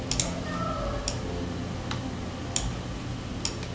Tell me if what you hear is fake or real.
real